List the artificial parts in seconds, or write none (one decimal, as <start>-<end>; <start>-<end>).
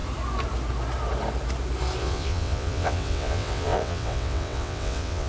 2.0-5.3